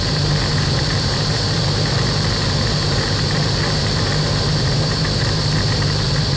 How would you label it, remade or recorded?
remade